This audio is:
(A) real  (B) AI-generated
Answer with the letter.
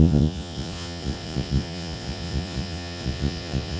B